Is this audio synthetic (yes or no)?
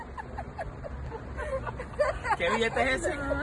no